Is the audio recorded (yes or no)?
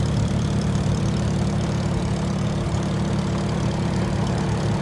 no